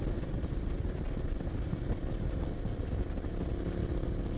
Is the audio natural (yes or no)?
yes